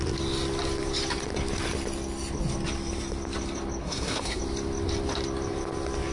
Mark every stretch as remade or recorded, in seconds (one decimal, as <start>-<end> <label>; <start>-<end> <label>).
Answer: 0.0-3.8 recorded; 3.8-4.4 remade; 4.4-6.1 recorded